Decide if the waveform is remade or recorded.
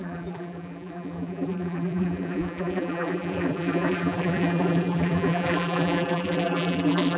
remade